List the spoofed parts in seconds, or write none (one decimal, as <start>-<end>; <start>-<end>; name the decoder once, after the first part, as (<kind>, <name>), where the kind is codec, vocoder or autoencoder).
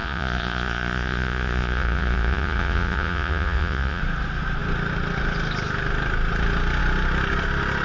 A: 0.0-4.0 (vocoder, Vocos)